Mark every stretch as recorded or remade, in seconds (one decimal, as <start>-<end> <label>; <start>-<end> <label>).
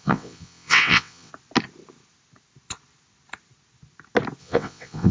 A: 0.0-1.3 remade; 1.3-4.4 recorded; 4.4-5.1 remade